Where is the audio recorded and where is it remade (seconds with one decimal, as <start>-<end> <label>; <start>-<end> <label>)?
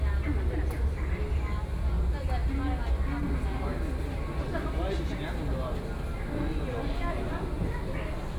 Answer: 0.0-8.4 recorded